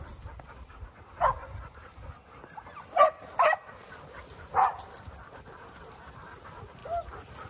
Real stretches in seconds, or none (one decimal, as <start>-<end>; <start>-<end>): 0.0-1.4; 2.1-7.5